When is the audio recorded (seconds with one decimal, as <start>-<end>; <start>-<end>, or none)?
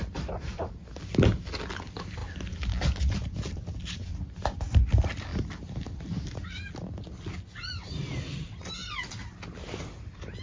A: 0.0-10.4